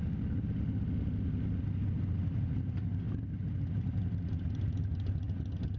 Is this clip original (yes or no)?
yes